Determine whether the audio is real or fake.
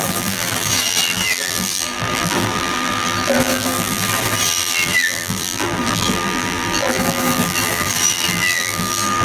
fake